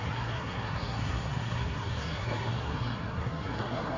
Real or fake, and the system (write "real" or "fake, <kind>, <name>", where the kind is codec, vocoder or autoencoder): fake, codec, SNAC